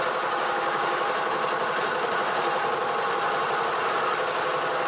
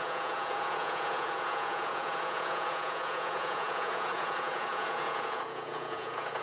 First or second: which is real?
first